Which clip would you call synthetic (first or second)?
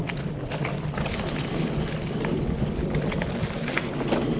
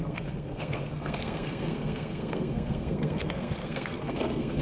second